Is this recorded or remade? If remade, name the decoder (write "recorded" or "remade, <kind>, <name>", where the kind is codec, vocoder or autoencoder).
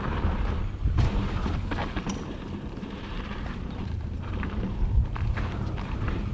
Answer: remade, vocoder, BigVGAN v2